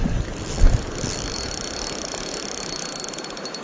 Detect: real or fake real